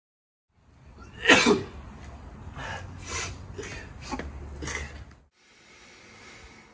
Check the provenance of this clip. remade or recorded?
recorded